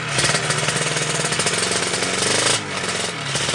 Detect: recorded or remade recorded